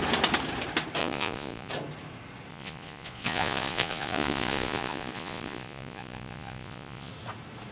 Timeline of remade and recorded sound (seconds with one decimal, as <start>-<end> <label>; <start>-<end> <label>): 0.0-1.0 recorded; 1.0-1.7 remade; 1.7-2.5 recorded; 2.5-7.1 remade; 7.1-7.7 recorded